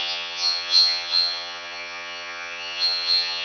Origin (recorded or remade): remade